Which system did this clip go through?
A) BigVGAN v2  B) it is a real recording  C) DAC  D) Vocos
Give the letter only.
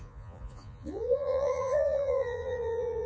D